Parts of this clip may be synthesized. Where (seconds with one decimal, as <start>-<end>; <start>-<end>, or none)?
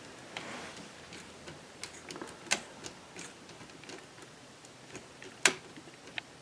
none